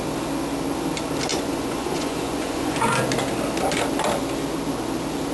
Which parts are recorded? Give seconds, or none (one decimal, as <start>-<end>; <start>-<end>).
0.0-1.3; 2.9-5.3

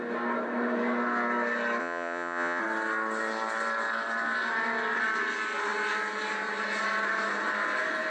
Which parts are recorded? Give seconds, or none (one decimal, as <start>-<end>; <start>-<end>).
0.0-1.8; 2.6-8.1

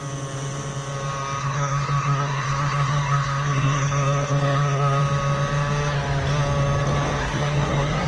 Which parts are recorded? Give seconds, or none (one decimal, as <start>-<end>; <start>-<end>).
0.0-1.4; 5.0-7.2

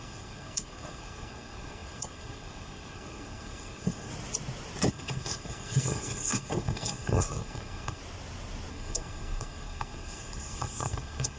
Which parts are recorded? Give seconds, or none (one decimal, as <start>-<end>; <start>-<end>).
4.1-4.9; 8.0-8.7

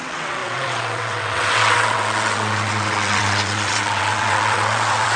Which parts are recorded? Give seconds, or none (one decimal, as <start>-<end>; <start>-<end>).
none

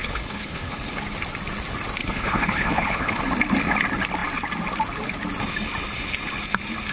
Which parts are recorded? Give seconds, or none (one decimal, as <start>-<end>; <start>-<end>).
1.0-2.0; 3.2-6.9